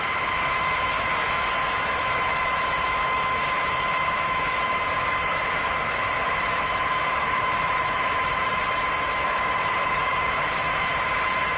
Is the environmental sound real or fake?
fake